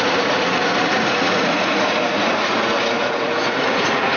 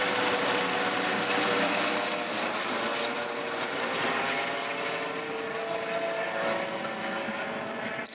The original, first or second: second